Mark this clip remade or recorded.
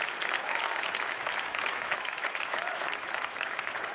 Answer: remade